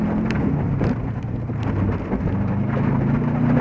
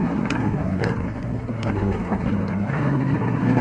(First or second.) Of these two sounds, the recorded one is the first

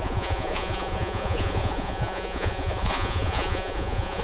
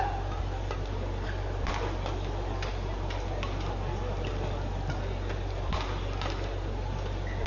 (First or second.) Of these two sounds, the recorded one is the second